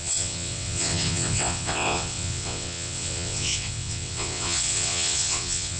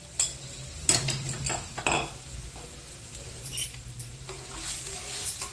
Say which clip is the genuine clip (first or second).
second